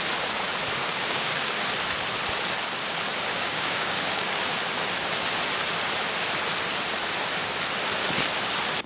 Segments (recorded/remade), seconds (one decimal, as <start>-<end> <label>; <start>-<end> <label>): 0.0-0.8 recorded; 0.8-1.6 remade; 1.6-3.3 recorded; 3.3-4.4 remade; 4.4-8.9 recorded